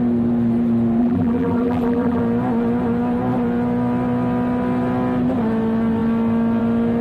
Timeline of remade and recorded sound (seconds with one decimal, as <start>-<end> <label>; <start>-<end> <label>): 0.0-1.0 recorded; 1.0-2.2 remade; 2.2-7.0 recorded